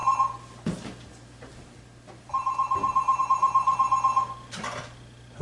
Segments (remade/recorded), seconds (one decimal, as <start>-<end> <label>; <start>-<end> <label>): 0.0-5.4 recorded